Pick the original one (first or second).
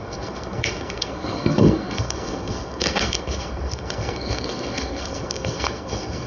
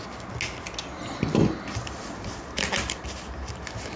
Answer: second